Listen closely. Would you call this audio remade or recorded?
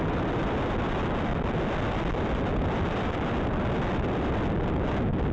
recorded